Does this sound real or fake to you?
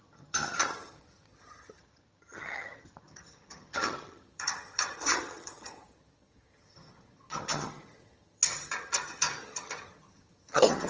fake